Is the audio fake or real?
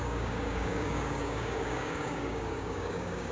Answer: fake